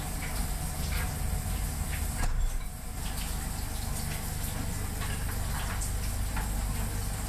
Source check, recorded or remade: recorded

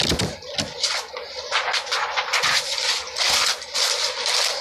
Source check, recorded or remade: recorded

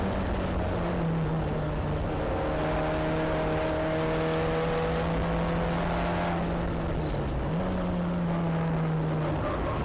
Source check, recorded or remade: recorded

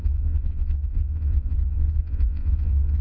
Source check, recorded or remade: remade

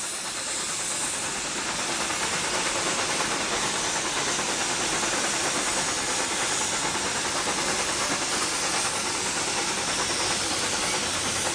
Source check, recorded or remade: recorded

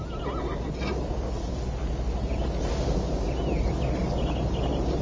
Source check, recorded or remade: recorded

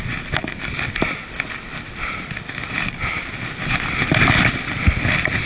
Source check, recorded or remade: recorded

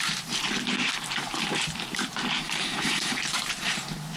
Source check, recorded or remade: remade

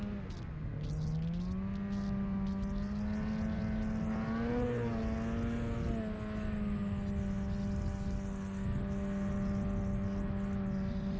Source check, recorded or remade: recorded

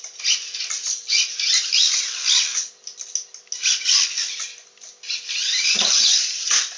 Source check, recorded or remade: recorded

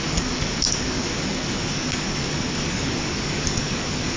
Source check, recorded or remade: remade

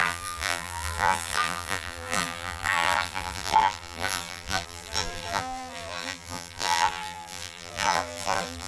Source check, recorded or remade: remade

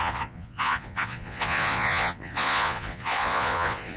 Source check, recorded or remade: remade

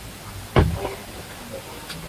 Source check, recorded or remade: recorded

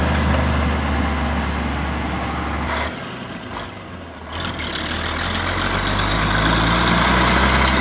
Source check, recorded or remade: recorded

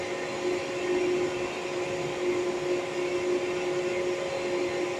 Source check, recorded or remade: recorded